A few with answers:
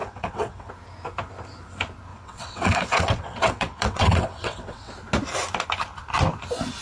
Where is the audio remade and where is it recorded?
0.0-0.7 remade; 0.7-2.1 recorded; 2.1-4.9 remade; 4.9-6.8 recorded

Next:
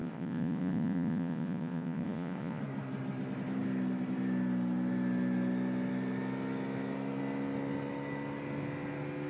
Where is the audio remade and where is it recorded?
0.0-2.6 remade; 2.6-9.3 recorded

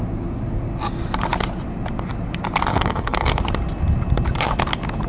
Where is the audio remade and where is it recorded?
0.0-2.7 recorded; 2.7-3.4 remade; 3.4-5.1 recorded

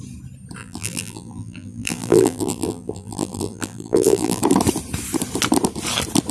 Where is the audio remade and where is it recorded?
0.0-0.6 recorded; 0.6-4.4 remade; 4.4-6.3 recorded

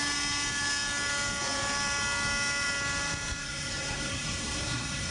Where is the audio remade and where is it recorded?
0.0-3.4 recorded; 3.4-5.1 remade

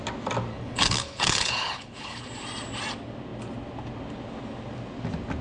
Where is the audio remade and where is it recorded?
0.0-0.5 recorded; 0.5-2.3 remade; 2.3-5.4 recorded

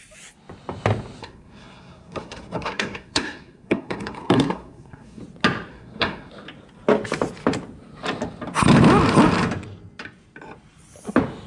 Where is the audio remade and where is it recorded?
0.0-1.2 recorded; 1.2-5.2 remade; 5.2-5.7 recorded; 5.7-6.3 remade; 6.3-11.5 recorded